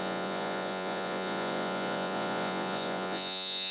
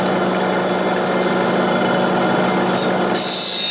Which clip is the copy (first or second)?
first